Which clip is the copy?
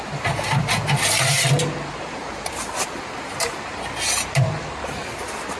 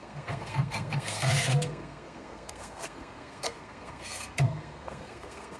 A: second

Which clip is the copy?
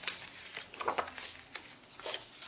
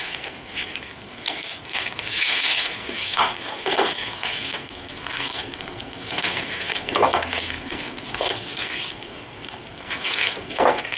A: second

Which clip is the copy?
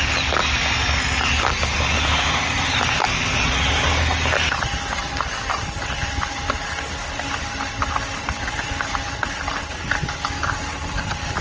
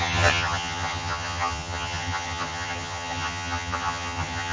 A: second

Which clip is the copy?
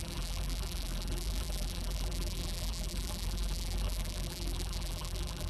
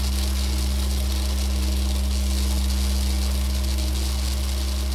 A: first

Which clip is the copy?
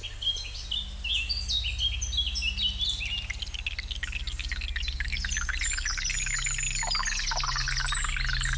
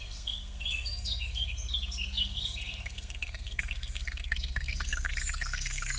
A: second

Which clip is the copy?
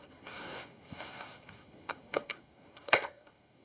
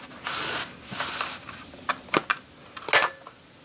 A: first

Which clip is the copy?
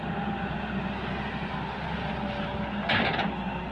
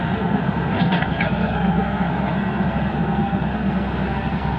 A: second